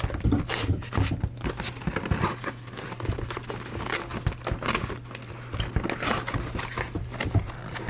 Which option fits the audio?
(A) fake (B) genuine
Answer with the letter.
B